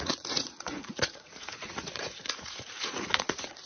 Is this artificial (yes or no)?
yes